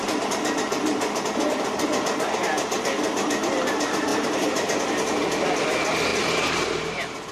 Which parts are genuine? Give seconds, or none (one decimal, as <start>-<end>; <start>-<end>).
0.0-4.1; 4.8-6.1